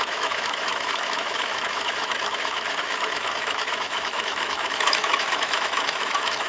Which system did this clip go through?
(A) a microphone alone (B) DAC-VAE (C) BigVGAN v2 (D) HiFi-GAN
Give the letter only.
B